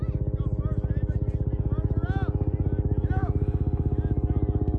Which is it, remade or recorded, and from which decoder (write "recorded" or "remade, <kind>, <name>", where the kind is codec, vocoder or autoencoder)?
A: recorded